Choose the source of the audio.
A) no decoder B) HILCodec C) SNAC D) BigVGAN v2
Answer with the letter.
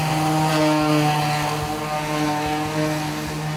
A